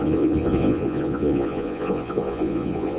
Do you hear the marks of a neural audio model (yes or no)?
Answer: yes